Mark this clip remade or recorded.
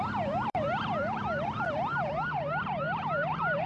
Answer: remade